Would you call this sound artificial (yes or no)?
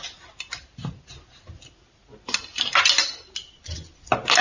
no